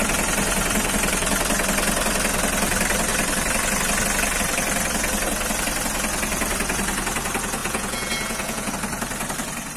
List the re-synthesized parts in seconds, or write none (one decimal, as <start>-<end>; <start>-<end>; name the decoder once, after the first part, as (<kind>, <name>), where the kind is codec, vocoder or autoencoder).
7.6-8.7 (vocoder, Vocos)